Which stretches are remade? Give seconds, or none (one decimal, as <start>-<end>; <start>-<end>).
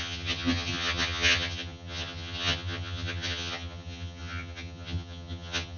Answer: 0.0-5.8